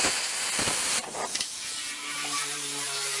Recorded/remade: remade